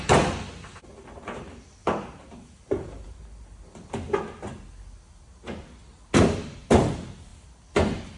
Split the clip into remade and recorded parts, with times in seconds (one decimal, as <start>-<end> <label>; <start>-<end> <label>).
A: 0.0-1.8 recorded; 1.8-3.6 remade; 3.6-8.2 recorded